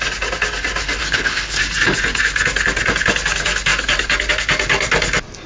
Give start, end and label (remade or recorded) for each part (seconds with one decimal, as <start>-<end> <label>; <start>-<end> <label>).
0.0-1.0 recorded; 1.0-1.6 remade; 1.6-5.5 recorded